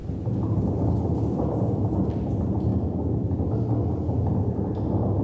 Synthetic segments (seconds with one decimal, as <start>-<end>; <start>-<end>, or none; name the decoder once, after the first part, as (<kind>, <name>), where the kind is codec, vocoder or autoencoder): none